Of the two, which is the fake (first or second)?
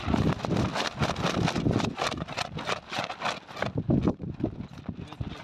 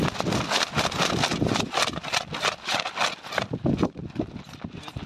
second